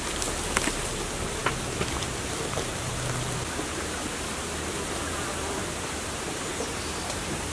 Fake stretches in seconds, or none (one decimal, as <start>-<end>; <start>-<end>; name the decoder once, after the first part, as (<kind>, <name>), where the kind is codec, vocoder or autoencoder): 5.6-7.5 (vocoder, BigVGAN v2)